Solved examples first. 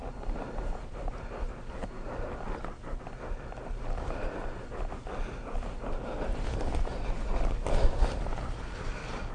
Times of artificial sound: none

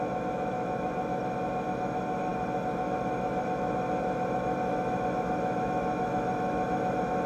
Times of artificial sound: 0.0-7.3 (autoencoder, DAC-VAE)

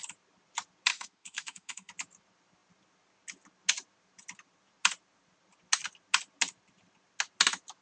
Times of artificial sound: 0.9-1.9 (autoencoder, DAC-VAE)